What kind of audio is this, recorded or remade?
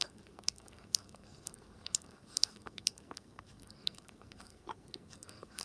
remade